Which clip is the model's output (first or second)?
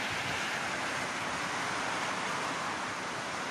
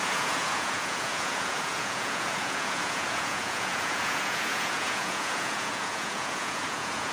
second